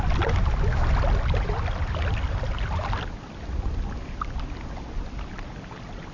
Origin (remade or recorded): recorded